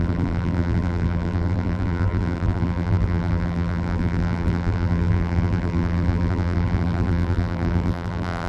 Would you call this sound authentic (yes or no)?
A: no